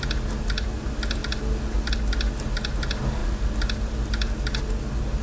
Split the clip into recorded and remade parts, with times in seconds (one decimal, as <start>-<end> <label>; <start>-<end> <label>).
0.0-5.2 recorded